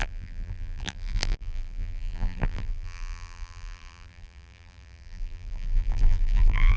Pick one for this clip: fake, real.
fake